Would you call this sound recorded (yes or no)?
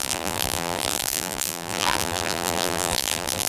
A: no